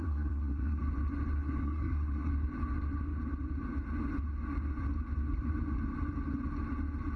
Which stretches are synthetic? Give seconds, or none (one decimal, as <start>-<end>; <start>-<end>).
0.0-0.8; 1.6-2.3